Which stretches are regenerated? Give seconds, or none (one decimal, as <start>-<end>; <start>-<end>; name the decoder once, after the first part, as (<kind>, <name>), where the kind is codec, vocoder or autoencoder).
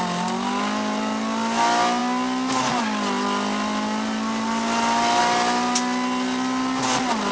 none